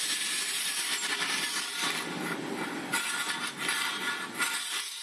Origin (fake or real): real